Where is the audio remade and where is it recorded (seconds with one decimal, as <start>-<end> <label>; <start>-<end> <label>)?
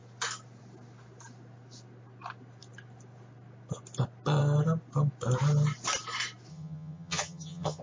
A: 0.0-6.5 recorded; 6.5-7.8 remade